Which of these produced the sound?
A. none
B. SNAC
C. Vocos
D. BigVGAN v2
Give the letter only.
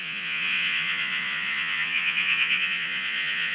C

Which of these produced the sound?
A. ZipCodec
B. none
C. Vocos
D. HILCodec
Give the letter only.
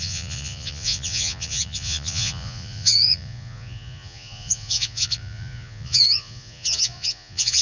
C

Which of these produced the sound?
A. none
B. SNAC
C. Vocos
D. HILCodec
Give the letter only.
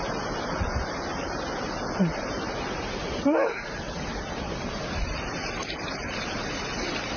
A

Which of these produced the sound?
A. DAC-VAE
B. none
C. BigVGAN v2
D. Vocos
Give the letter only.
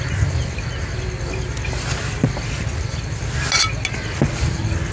B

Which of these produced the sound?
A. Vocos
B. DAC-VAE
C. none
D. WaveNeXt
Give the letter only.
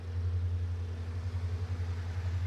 C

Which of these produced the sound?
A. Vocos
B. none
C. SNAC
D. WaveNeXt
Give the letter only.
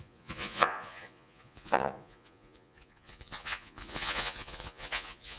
A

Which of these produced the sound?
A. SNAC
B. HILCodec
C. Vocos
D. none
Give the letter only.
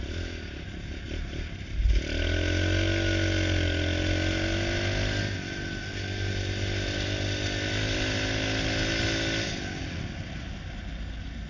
D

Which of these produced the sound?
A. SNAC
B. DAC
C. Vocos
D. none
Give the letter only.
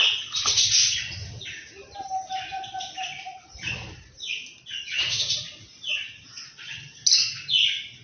D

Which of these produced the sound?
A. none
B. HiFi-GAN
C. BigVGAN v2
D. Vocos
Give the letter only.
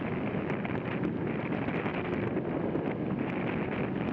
A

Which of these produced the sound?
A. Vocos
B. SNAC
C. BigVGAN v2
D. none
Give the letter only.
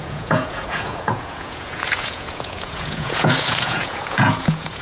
A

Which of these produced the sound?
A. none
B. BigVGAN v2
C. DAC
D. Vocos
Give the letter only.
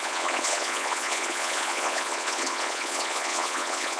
D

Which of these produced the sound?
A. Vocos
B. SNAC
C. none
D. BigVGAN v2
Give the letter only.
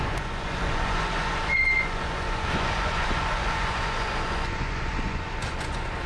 A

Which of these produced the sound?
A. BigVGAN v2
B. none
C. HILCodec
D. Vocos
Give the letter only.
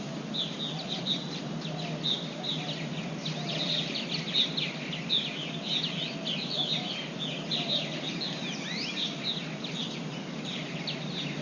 B